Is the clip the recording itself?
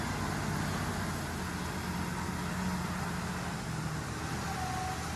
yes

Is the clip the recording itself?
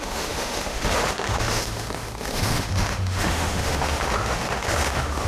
no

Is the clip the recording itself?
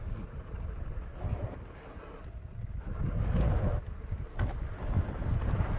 yes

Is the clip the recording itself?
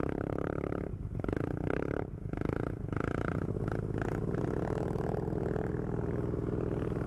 yes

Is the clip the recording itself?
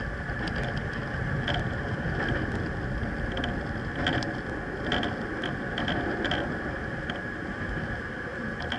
yes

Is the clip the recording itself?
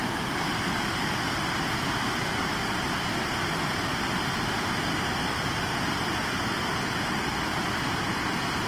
yes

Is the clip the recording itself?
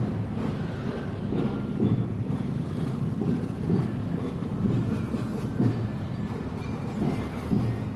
yes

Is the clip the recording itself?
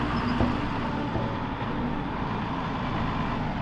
yes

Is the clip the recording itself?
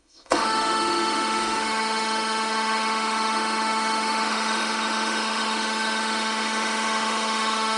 no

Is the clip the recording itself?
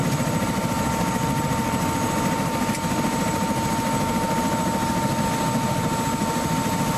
yes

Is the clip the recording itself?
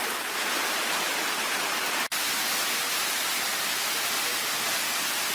yes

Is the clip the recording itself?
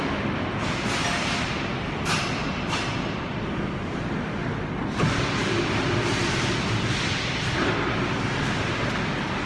yes